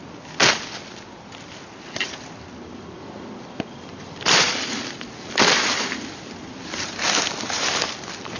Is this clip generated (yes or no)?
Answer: no